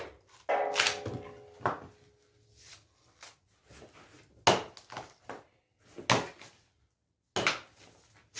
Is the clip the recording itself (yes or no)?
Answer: yes